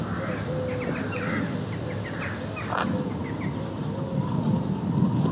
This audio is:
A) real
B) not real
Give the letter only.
A